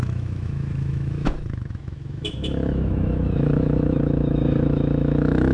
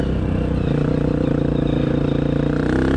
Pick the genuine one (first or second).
second